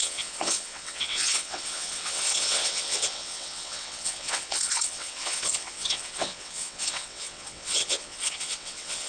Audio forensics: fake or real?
fake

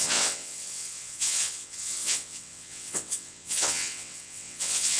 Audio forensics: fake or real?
fake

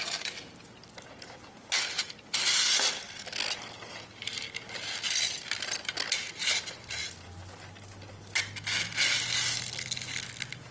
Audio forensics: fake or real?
real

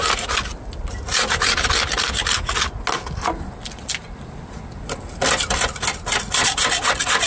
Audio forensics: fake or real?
real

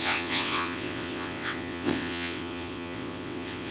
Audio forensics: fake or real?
fake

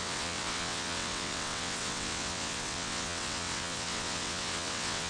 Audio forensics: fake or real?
fake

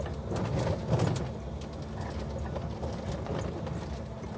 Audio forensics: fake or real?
real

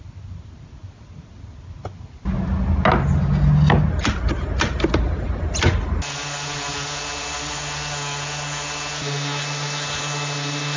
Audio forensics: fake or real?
real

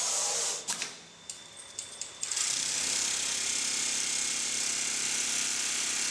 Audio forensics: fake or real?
real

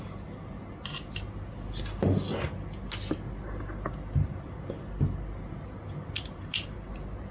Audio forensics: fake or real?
real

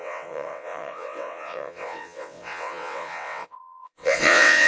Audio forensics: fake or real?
fake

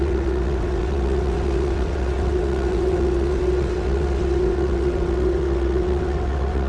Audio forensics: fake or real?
fake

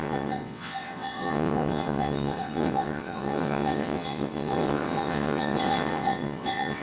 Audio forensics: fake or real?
fake